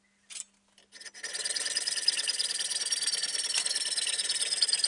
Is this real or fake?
real